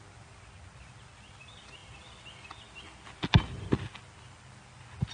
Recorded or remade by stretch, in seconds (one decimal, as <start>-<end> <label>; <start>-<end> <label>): 0.0-5.1 recorded